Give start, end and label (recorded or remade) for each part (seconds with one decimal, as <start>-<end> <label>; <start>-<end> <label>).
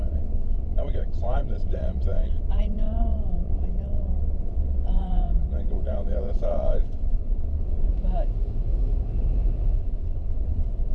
0.0-7.9 remade; 7.9-9.8 recorded; 9.8-10.9 remade